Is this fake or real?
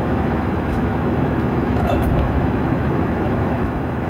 fake